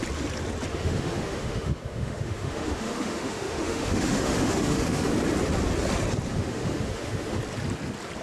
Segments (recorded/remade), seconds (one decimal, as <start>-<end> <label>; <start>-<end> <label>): 0.0-0.7 recorded; 0.7-5.1 remade; 5.1-6.3 recorded; 6.3-7.4 remade; 7.4-8.2 recorded